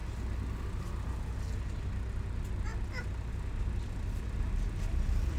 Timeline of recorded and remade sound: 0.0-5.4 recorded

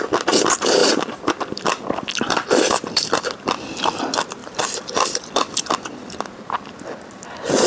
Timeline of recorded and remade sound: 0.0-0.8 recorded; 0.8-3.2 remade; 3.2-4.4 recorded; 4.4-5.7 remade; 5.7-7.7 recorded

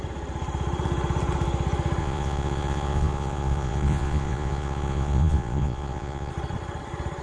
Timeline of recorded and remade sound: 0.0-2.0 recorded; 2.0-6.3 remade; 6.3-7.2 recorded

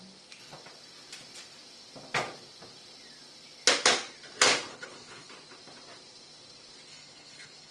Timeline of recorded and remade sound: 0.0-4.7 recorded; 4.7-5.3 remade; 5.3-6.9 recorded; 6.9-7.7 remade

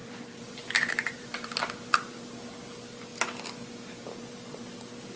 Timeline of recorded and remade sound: 0.0-1.5 remade; 1.5-5.2 recorded